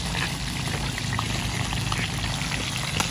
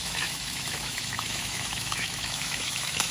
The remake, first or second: second